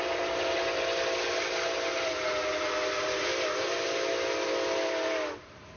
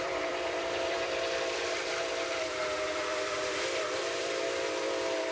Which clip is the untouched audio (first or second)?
first